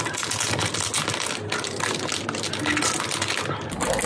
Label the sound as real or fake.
real